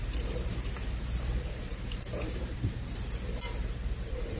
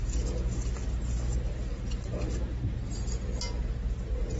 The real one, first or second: second